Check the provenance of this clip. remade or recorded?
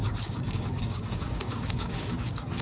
remade